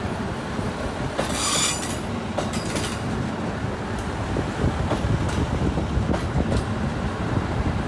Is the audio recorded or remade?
recorded